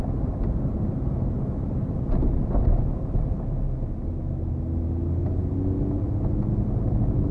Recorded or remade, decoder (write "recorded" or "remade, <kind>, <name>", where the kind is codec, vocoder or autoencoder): recorded